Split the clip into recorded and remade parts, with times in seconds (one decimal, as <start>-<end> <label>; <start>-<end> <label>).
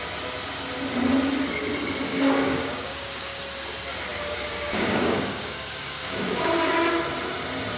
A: 0.0-2.1 recorded; 2.1-3.4 remade; 3.4-4.1 recorded; 4.1-6.5 remade; 6.5-7.8 recorded